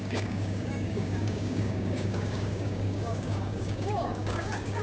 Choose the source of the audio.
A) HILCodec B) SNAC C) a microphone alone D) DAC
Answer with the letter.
D